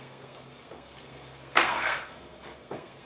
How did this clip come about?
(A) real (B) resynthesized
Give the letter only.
B